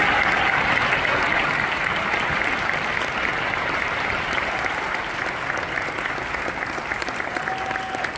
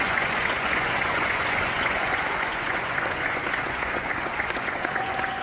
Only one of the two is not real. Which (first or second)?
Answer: second